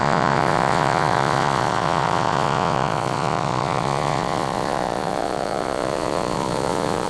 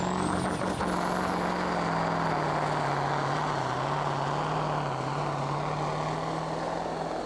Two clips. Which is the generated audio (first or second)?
first